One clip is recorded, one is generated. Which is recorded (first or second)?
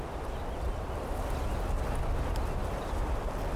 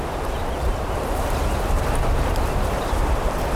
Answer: first